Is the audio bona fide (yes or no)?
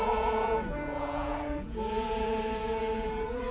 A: no